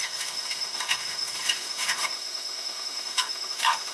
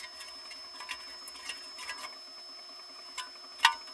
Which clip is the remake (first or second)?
first